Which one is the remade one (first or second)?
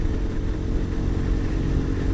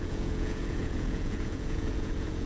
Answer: second